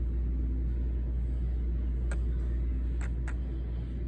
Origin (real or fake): real